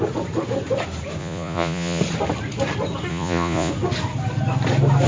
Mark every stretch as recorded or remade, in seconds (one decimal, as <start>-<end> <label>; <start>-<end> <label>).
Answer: 0.0-1.2 recorded; 1.2-2.0 remade; 2.0-3.1 recorded; 3.1-3.7 remade; 3.7-5.1 recorded